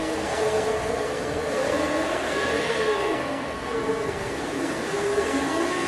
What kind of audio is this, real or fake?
fake